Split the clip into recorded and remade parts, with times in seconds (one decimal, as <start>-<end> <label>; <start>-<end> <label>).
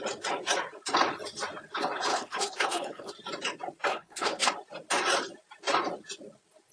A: 0.0-2.1 recorded; 2.1-3.1 remade; 3.1-3.9 recorded; 3.9-4.5 remade; 4.5-6.7 recorded